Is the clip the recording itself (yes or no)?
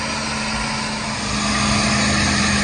yes